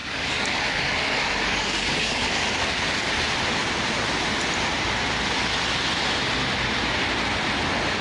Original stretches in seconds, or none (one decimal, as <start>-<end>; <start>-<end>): 3.1-8.0